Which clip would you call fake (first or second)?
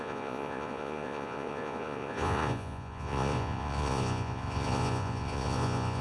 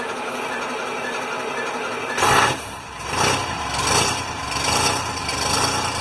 first